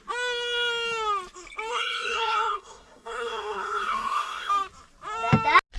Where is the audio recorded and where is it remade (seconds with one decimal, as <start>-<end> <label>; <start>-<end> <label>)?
0.0-1.7 recorded; 1.7-4.5 remade; 4.5-5.8 recorded